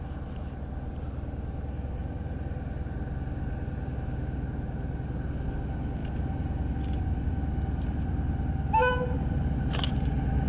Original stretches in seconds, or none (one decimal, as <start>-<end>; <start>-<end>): 0.0-2.0; 2.7-8.9; 9.4-10.5